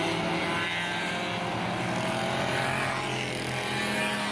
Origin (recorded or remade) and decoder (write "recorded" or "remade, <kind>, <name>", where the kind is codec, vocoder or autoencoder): recorded